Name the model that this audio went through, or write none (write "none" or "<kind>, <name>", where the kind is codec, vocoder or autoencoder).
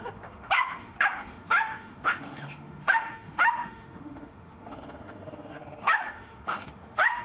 autoencoder, DAC-VAE